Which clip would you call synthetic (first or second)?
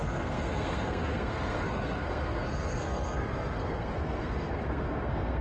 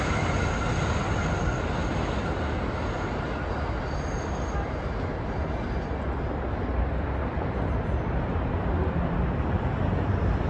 first